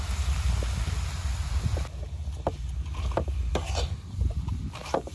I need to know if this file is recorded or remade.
recorded